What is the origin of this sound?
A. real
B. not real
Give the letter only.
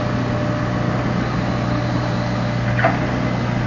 A